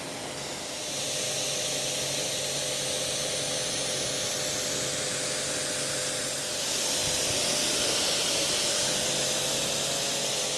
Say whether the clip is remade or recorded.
recorded